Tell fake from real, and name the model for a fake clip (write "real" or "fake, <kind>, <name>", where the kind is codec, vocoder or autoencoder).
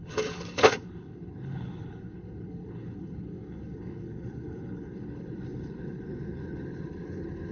fake, codec, HILCodec